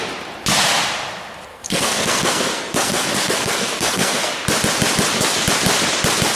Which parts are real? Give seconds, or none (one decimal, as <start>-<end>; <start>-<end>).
0.0-1.5; 4.3-6.4